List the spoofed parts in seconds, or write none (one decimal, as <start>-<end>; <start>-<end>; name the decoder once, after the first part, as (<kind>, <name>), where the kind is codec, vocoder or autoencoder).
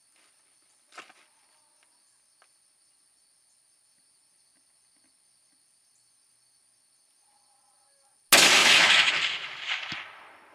8.6-9.1 (autoencoder, DAC-VAE)